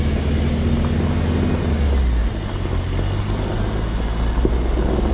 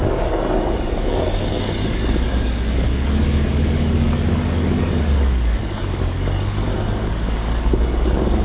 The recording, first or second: first